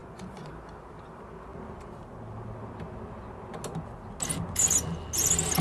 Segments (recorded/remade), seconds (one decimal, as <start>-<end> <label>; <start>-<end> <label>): 0.0-0.5 remade; 0.5-5.6 recorded